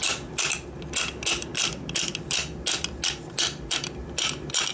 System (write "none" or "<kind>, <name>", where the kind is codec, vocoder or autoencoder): none